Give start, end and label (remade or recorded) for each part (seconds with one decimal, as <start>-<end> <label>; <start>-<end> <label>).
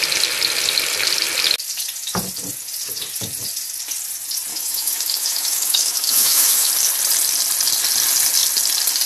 0.0-4.5 recorded; 4.5-6.7 remade; 6.7-9.1 recorded